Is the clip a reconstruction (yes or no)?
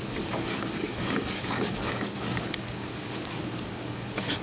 yes